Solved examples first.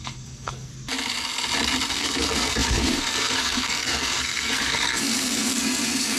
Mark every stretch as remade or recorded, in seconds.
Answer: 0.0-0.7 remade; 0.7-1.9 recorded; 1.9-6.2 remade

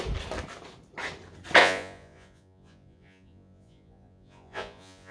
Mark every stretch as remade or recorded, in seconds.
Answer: 0.0-1.6 recorded; 1.6-5.1 remade

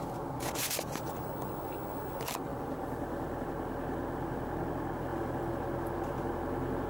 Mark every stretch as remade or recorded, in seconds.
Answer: 0.0-2.5 recorded; 2.5-3.5 remade; 3.5-5.1 recorded; 5.1-5.6 remade; 5.6-6.9 recorded

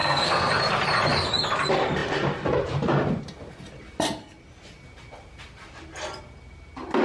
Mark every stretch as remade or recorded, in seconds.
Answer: 0.0-0.5 remade; 0.5-7.0 recorded